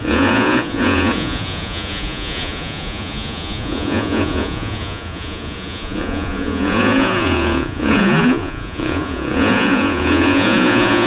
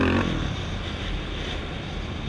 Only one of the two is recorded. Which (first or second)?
second